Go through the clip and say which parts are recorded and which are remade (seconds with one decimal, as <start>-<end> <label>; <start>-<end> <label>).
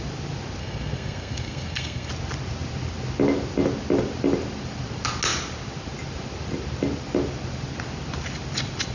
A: 0.0-0.6 recorded; 0.6-2.1 remade; 2.1-8.9 recorded